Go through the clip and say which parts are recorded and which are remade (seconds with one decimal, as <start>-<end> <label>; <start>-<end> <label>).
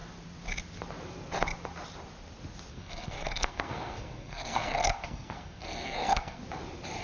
0.0-2.7 recorded; 2.7-6.4 remade; 6.4-7.0 recorded